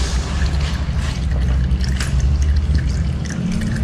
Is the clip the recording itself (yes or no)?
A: yes